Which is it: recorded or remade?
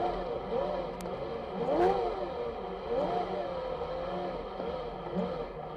recorded